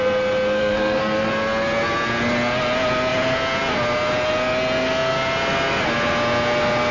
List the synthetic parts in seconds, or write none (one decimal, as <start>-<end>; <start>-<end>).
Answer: 0.6-1.3